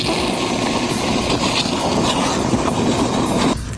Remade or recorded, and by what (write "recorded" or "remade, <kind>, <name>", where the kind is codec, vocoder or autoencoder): recorded